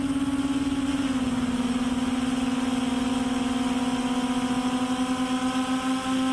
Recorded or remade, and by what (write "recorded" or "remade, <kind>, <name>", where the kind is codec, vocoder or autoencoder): recorded